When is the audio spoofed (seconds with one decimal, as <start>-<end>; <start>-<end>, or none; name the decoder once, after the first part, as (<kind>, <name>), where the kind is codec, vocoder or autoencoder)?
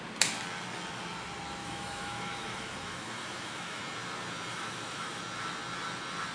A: 1.6-3.8 (autoencoder, DAC-VAE); 4.5-5.2